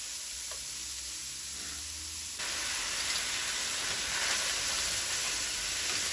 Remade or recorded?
recorded